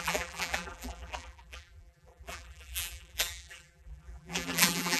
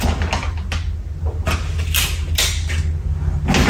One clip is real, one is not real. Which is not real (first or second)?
first